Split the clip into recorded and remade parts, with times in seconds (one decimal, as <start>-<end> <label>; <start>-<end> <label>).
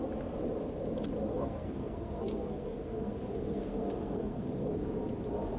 0.0-1.3 recorded; 1.3-4.7 remade; 4.7-5.6 recorded